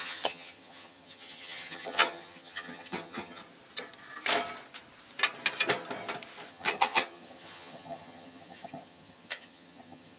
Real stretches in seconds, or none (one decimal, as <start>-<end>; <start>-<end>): 3.4-6.5